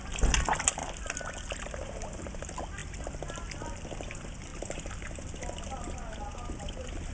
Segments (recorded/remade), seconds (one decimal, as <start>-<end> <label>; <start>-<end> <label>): 0.0-7.1 recorded